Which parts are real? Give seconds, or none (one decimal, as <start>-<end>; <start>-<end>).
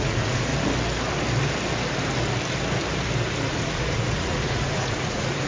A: 0.5-3.5